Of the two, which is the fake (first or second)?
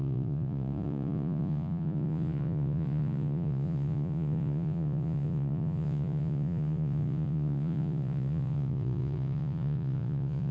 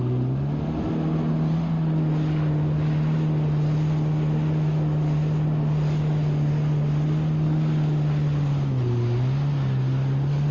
first